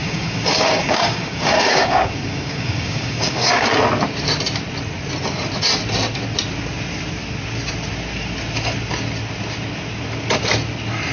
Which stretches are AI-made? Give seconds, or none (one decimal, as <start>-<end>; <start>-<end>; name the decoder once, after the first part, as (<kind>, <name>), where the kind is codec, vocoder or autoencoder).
0.0-3.7 (codec, DAC)